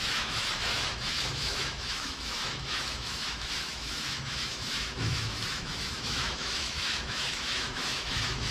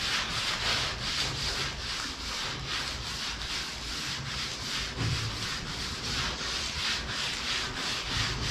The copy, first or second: first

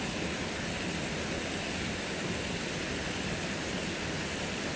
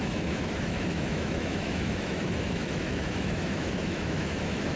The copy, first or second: second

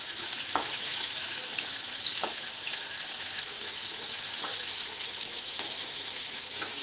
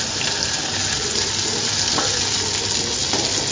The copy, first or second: first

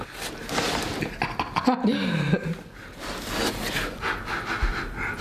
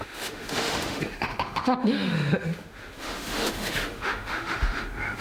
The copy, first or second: second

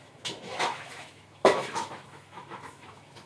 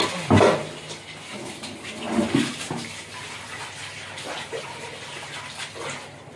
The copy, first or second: first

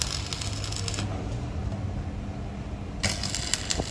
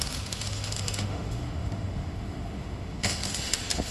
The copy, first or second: second